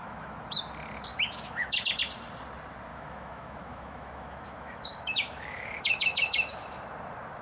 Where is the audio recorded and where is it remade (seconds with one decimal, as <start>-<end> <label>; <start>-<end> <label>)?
0.0-0.6 remade; 0.6-1.1 recorded; 1.1-2.0 remade; 2.0-2.9 recorded; 2.9-6.8 remade; 6.8-7.4 recorded